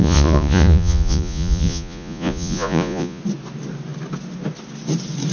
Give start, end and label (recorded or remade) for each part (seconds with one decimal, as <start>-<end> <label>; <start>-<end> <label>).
0.0-3.2 remade; 3.2-5.3 recorded